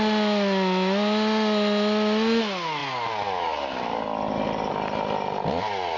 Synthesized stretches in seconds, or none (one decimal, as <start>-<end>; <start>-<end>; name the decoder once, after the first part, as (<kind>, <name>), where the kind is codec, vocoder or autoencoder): none

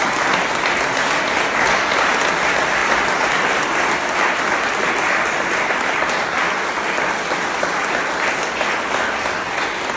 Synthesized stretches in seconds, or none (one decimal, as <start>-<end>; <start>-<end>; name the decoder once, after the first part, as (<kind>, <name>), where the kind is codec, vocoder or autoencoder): none